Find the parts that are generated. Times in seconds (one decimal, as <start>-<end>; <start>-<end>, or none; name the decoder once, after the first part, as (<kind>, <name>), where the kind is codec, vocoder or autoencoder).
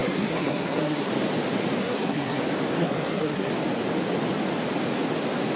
0.0-1.1 (codec, SNAC); 1.8-2.4; 2.8-3.5